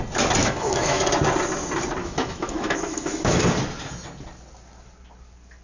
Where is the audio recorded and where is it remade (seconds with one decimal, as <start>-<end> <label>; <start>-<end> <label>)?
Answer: 0.0-0.4 recorded; 0.4-1.0 remade; 1.0-2.0 recorded; 2.0-3.4 remade; 3.4-5.6 recorded